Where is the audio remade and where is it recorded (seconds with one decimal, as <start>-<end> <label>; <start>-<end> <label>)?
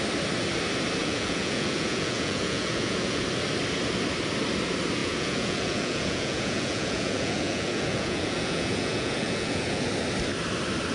0.0-1.0 recorded; 1.0-3.2 remade; 3.2-5.0 recorded; 5.0-9.9 remade; 9.9-10.9 recorded